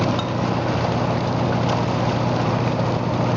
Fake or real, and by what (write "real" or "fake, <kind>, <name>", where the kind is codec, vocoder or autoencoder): real